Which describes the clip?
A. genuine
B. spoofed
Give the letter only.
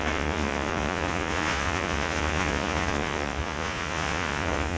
B